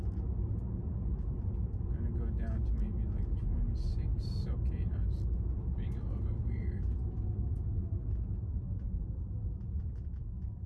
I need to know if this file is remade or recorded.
recorded